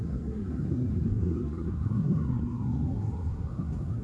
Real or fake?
fake